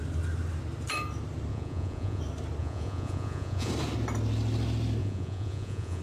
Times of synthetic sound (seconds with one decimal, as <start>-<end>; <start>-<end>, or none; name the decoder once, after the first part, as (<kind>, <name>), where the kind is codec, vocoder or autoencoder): 1.5-2.2 (vocoder, Vocos); 2.6-3.7; 5.0-6.0